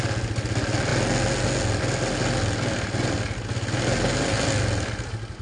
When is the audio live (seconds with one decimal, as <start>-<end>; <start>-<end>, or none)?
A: 0.0-5.4